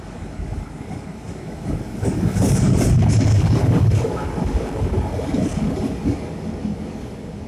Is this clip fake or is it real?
fake